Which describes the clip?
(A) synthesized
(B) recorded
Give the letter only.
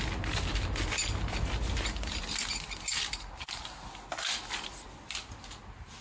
B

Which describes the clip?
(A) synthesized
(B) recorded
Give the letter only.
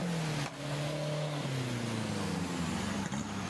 B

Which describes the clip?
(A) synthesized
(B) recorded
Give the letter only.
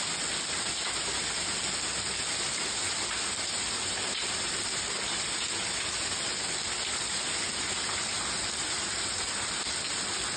B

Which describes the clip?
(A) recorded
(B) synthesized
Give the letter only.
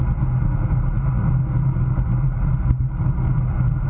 A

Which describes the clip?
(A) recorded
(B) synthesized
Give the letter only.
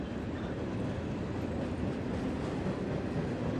A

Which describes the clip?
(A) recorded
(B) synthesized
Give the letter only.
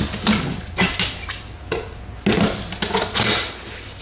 A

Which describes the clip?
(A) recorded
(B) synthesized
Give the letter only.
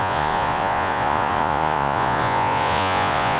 B